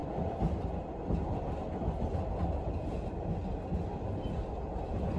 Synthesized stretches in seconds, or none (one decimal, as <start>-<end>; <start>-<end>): none